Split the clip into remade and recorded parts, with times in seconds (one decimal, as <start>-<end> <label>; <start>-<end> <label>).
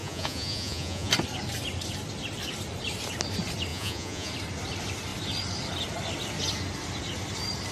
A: 0.0-1.1 remade; 1.1-3.7 recorded; 3.7-4.3 remade; 4.3-7.7 recorded